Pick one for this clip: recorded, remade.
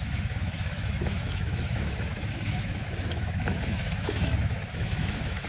remade